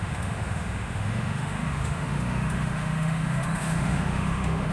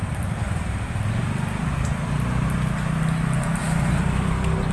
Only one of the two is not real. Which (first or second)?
first